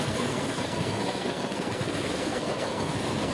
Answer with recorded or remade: remade